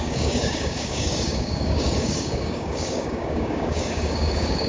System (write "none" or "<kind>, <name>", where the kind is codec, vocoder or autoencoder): codec, DAC